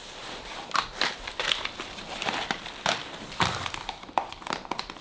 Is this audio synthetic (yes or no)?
yes